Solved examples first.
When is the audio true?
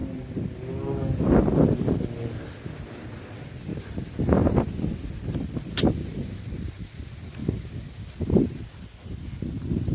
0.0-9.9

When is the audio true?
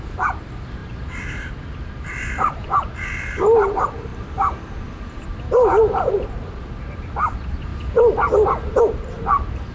4.1-5.4; 7.7-8.8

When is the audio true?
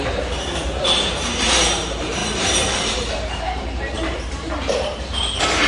none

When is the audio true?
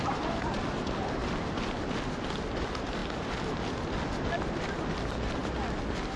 0.0-6.2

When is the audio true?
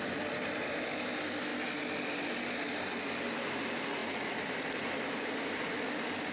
0.0-4.0; 5.6-6.3